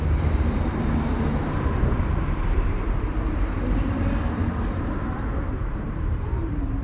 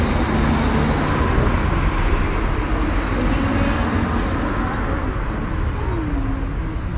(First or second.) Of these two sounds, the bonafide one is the second